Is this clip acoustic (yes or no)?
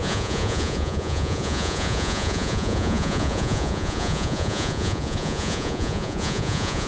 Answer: no